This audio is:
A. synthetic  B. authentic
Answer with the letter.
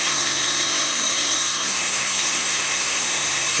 A